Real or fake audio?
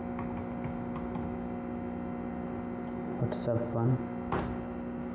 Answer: real